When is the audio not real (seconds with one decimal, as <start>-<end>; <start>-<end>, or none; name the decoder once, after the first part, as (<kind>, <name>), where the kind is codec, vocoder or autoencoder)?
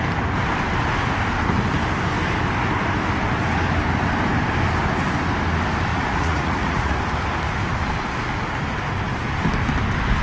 5.9-7.0 (vocoder, Vocos)